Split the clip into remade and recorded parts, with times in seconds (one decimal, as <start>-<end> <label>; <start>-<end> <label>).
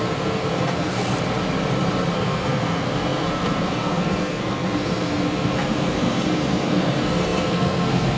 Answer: 0.0-1.1 remade; 1.1-2.1 recorded; 2.1-8.2 remade